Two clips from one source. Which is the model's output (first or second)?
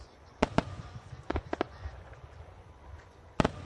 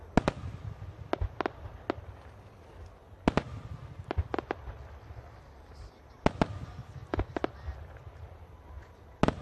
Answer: first